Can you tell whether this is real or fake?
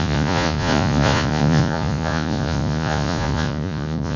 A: fake